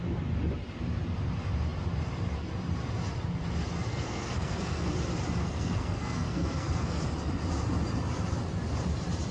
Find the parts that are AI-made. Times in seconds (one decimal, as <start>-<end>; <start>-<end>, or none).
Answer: 3.9-4.9; 5.4-7.0